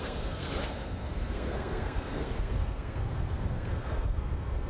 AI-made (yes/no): yes